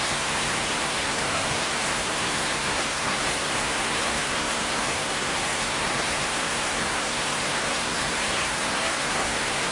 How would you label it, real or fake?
fake